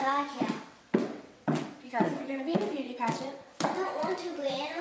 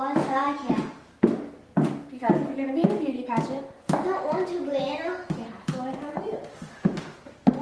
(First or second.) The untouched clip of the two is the second